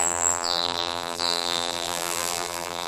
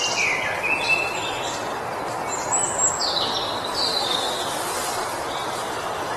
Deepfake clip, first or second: first